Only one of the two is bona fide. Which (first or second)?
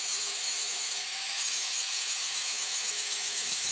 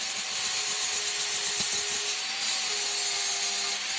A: second